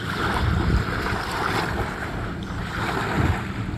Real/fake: real